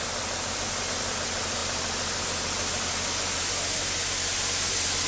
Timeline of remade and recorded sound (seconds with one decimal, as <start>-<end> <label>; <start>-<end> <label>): 0.0-5.1 recorded

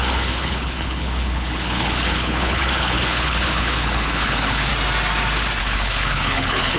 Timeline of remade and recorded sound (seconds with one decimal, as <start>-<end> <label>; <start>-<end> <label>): 0.0-4.7 remade; 4.7-5.6 recorded; 5.6-6.8 remade

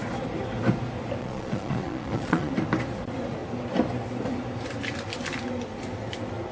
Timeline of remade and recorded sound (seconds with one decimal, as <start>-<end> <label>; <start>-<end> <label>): 0.0-1.2 recorded; 1.2-2.5 remade; 2.5-6.5 recorded

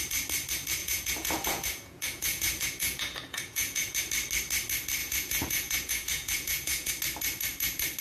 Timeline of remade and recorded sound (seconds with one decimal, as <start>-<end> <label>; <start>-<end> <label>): 0.0-0.8 recorded; 0.8-4.0 remade; 4.0-5.0 recorded; 5.0-6.9 remade; 6.9-8.0 recorded

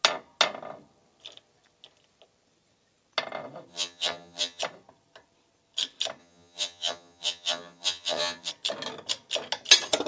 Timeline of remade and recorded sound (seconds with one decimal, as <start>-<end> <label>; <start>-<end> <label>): 0.0-3.7 recorded; 3.7-4.6 remade; 4.6-6.2 recorded; 6.2-8.5 remade; 8.5-10.1 recorded